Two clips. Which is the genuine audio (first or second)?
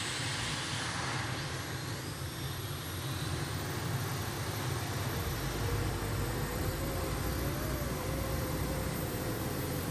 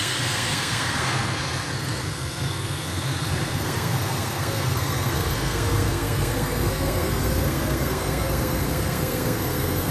first